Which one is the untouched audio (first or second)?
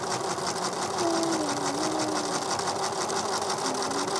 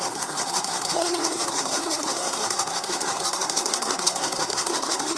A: first